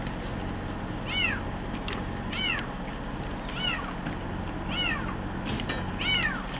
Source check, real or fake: real